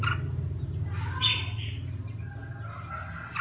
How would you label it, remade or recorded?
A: recorded